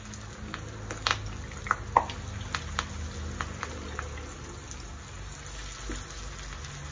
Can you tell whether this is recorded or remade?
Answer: recorded